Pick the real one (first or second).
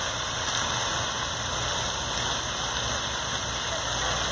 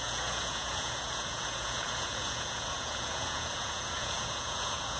first